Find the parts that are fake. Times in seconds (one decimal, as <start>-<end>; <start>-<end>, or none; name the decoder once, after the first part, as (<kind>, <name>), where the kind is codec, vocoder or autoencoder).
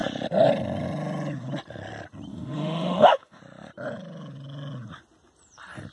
2.3-3.4 (autoencoder, DAC-VAE)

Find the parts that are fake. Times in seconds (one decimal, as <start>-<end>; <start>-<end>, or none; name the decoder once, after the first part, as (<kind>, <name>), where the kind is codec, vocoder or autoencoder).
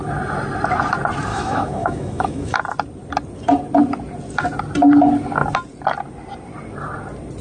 1.3-2.6 (autoencoder, DAC-VAE)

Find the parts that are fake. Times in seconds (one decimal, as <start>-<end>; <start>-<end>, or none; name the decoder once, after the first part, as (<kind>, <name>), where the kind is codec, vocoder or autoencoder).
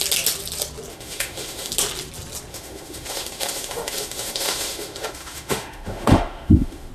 0.9-1.7 (autoencoder, DAC-VAE); 2.5-6.9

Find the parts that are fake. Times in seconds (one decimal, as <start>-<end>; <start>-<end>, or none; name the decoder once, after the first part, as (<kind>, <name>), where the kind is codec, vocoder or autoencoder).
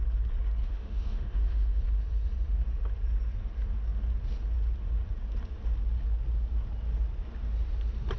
0.6-1.8 (autoencoder, DAC-VAE)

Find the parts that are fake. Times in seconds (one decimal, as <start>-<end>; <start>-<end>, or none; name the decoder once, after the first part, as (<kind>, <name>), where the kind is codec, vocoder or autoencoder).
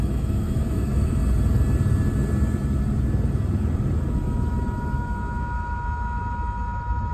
0.0-1.2 (autoencoder, DAC-VAE); 4.1-7.1